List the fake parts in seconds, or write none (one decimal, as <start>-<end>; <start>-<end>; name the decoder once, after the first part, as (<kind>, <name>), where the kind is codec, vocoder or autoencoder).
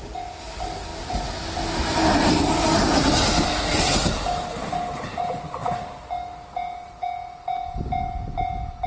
none